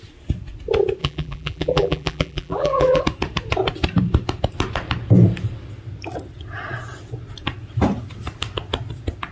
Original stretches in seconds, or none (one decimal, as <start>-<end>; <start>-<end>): 0.0-1.0; 3.0-9.3

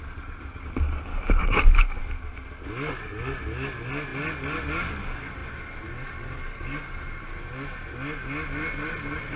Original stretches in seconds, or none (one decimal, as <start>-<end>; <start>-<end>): 0.0-1.1; 2.0-9.4

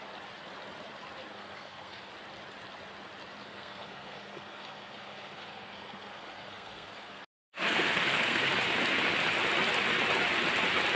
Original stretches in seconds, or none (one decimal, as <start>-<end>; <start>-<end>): 0.0-1.3; 2.1-3.4; 8.5-11.0

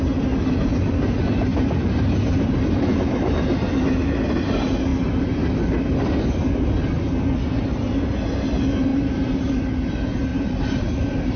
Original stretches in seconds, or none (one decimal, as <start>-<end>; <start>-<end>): 0.0-1.5; 2.4-8.9; 9.9-10.3

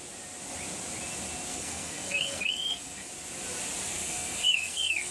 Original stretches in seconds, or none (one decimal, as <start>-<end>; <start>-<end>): 0.0-1.5; 3.1-3.9

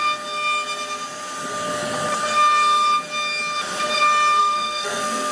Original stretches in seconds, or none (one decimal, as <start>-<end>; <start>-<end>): 0.0-4.4